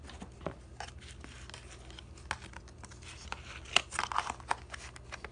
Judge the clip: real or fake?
real